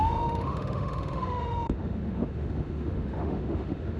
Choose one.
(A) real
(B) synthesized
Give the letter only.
B